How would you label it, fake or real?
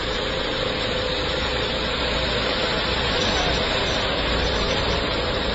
fake